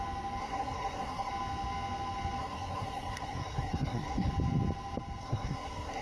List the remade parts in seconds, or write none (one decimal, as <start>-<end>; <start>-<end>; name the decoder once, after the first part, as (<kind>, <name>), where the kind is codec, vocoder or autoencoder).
0.4-1.3 (codec, SNAC); 2.4-4.3; 5.2-6.0